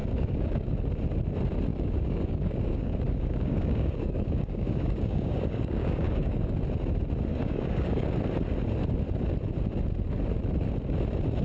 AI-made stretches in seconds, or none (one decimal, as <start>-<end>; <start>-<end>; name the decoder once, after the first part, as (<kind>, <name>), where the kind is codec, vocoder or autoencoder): 0.0-0.7 (codec, DAC); 1.7-6.5; 7.3-8.2